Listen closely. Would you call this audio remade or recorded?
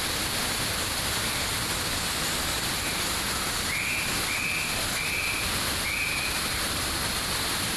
recorded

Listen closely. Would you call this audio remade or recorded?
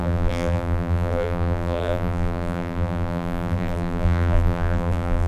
remade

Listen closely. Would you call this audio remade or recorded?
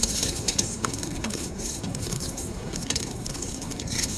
remade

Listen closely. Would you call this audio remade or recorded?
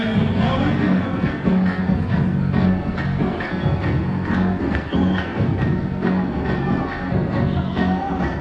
remade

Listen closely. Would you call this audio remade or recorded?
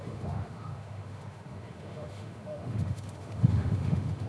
remade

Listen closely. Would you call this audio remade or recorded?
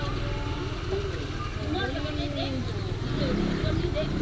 recorded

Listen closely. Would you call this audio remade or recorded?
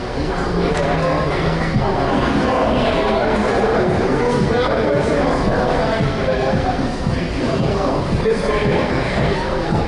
remade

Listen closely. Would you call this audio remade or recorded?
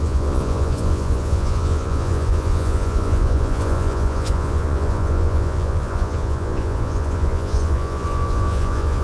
remade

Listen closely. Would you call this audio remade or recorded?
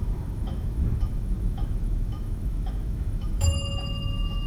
remade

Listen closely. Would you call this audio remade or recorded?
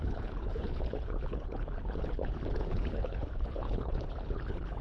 remade